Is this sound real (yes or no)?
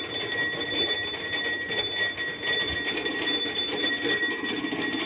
yes